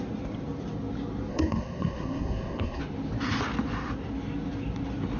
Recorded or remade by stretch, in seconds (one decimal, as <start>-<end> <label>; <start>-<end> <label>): 0.0-1.3 recorded; 1.3-2.8 remade; 2.8-5.2 recorded